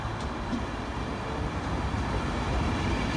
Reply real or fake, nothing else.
real